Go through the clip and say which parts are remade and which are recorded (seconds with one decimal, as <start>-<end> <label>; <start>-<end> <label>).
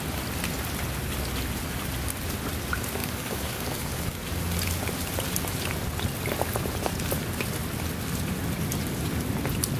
0.0-3.0 recorded; 3.0-4.0 remade; 4.0-9.8 recorded